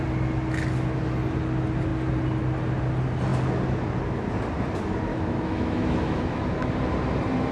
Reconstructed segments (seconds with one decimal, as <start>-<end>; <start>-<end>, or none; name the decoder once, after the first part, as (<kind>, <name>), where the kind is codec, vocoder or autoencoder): 5.1-6.7 (autoencoder, DAC-VAE)